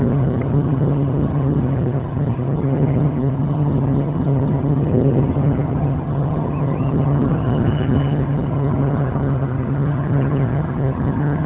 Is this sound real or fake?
fake